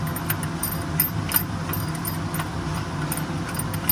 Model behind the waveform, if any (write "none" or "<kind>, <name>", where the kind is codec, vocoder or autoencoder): none